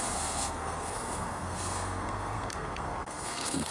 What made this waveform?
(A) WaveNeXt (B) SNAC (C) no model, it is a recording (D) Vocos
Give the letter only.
B